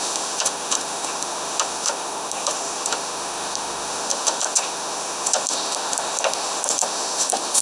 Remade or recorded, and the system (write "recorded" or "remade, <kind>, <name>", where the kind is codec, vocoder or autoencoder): remade, autoencoder, DAC-VAE